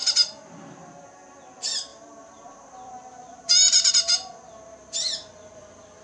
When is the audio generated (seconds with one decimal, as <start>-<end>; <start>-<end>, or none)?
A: 1.9-3.9